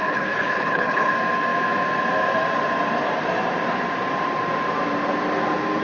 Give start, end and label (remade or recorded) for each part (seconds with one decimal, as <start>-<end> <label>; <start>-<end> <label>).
0.0-1.1 remade; 1.1-5.8 recorded